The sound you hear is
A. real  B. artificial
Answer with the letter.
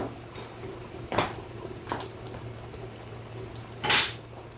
A